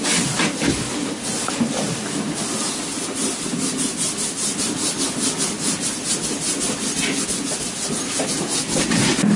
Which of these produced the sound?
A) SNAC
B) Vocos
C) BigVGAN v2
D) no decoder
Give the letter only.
D